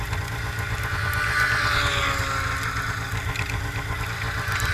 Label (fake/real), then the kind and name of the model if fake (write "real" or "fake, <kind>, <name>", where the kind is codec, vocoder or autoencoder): real